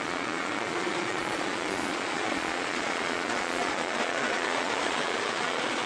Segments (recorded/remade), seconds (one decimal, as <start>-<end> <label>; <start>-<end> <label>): 0.0-5.9 remade